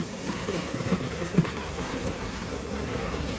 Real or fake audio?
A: fake